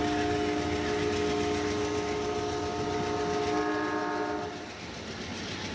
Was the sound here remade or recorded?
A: recorded